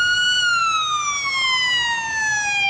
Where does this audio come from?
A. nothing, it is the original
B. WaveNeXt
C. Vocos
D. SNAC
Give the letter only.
A